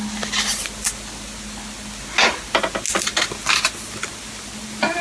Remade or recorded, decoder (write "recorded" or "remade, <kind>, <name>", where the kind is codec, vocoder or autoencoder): recorded